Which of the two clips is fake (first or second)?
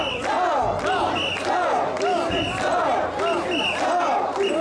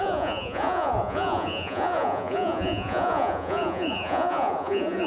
second